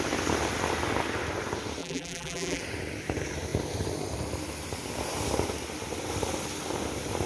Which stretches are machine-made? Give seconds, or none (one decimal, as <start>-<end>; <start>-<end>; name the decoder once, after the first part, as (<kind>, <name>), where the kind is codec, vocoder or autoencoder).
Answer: 1.8-2.6 (vocoder, BigVGAN v2)